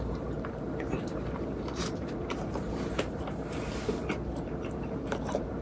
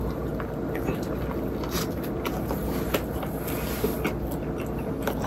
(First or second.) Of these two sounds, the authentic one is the second